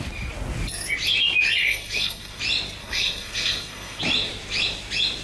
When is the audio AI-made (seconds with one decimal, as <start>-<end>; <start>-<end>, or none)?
1.6-2.4; 2.8-4.0